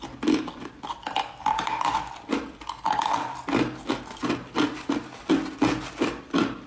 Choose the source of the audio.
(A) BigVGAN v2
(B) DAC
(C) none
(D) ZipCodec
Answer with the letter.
C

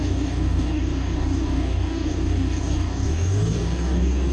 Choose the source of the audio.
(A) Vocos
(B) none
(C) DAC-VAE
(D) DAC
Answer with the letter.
D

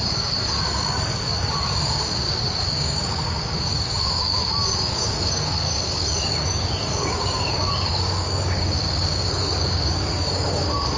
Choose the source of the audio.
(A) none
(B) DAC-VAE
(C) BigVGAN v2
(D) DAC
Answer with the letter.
D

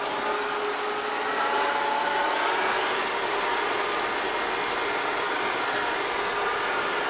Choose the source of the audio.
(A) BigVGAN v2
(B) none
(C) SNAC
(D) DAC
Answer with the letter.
B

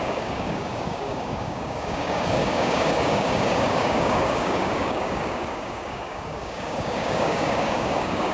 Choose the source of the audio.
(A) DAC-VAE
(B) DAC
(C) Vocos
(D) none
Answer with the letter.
B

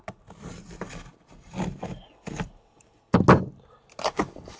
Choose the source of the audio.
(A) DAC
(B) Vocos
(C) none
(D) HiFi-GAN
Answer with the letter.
C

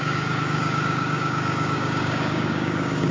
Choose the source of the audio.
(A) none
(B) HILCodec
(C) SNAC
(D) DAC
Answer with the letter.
D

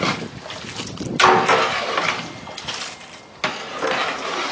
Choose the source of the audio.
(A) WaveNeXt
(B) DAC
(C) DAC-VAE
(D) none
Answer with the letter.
D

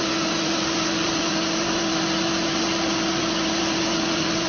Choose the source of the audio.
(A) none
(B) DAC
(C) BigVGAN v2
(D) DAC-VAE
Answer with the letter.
A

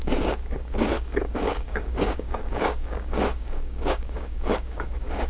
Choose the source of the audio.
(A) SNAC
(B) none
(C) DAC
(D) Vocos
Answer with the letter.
C